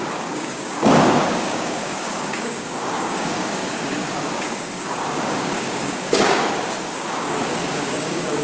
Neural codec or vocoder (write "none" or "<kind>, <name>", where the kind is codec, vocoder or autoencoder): codec, DAC